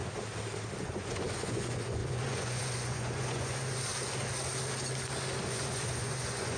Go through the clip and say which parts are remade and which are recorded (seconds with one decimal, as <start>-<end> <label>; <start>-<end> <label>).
0.0-0.8 recorded; 0.8-3.9 remade; 3.9-5.5 recorded; 5.5-6.6 remade